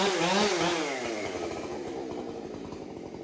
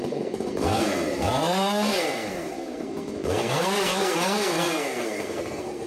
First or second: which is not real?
second